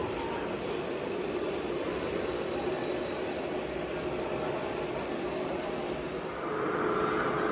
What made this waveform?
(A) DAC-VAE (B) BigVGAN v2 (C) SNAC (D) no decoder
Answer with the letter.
D